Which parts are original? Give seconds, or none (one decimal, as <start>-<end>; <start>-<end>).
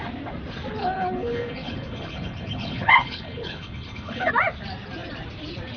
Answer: 0.0-0.8; 4.3-5.8